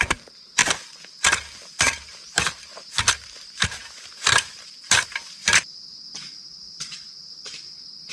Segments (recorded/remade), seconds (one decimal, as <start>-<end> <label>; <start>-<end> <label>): 0.0-0.6 remade; 0.6-1.8 recorded; 1.8-8.1 remade